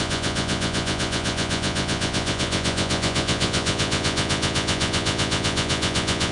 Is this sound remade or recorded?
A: remade